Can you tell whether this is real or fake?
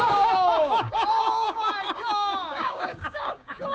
fake